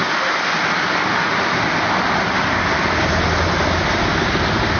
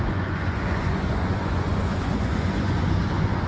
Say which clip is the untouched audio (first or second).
first